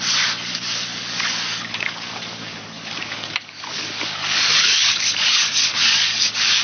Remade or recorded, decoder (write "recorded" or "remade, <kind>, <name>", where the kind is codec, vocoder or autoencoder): remade, codec, DAC